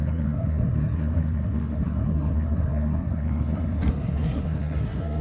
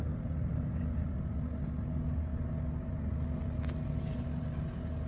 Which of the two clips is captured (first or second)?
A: second